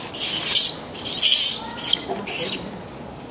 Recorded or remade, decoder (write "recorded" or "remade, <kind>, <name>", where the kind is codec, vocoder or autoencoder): recorded